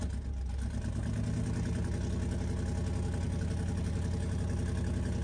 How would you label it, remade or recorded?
recorded